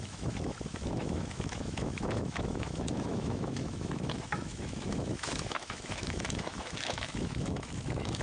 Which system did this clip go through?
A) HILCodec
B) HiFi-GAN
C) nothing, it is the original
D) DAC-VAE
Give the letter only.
D